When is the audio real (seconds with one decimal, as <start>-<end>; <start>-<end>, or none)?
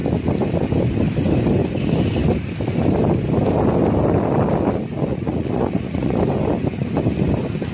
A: 0.0-5.1; 6.2-7.7